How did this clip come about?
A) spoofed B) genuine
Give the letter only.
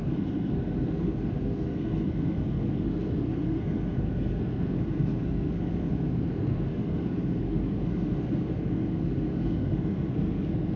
A